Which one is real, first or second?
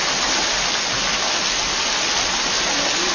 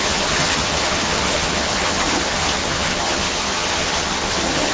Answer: first